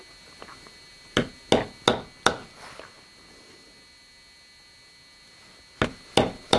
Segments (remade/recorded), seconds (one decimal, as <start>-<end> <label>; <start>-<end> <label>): 0.0-6.6 recorded